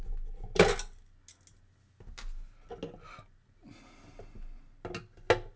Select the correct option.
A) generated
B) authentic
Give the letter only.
B